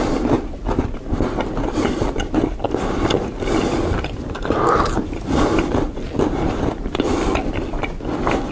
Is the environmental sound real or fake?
real